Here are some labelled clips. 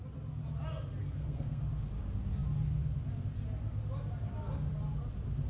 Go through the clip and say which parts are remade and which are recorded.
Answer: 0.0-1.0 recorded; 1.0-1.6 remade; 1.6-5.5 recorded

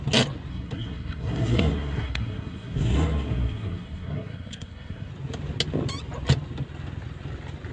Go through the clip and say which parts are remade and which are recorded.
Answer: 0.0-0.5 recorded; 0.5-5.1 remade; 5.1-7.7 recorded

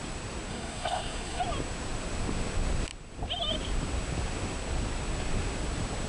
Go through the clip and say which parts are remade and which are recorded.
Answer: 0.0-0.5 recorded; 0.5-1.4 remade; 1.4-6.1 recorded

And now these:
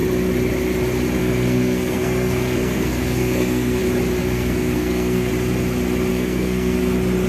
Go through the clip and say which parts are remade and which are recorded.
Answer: 0.0-1.2 recorded; 1.2-3.8 remade; 3.8-4.2 recorded; 4.2-5.3 remade; 5.3-6.1 recorded; 6.1-6.8 remade; 6.8-7.3 recorded

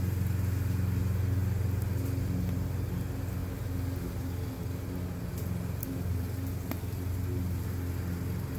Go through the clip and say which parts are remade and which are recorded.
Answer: 0.0-8.6 recorded